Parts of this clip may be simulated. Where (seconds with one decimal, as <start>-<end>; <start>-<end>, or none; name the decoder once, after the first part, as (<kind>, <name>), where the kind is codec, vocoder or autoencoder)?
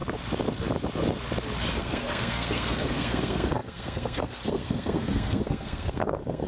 1.8-6.5 (codec, SNAC)